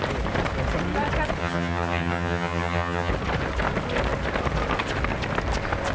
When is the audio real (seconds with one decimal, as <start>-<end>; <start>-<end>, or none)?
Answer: 0.0-1.4; 3.1-5.9